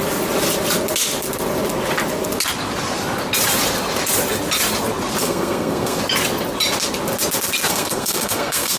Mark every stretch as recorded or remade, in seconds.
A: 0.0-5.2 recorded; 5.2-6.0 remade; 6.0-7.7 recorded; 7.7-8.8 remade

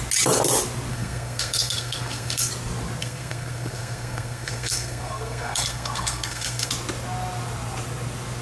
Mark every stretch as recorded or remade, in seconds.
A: 0.0-0.9 recorded; 0.9-2.5 remade; 2.5-3.0 recorded; 3.0-6.7 remade; 6.7-8.4 recorded

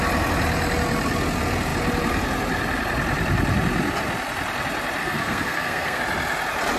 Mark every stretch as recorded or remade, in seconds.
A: 0.0-5.0 recorded; 5.0-6.0 remade; 6.0-6.8 recorded

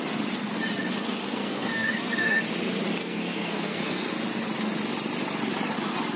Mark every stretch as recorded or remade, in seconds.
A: 0.0-1.2 recorded; 1.2-2.4 remade; 2.4-3.0 recorded; 3.0-4.1 remade; 4.1-6.2 recorded

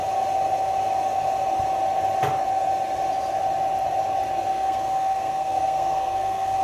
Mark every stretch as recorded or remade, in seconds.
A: 0.0-4.5 recorded; 4.5-6.6 remade

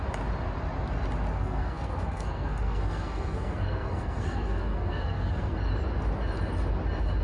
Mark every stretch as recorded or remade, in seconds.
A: 0.0-1.3 recorded; 1.3-5.6 remade; 5.6-7.2 recorded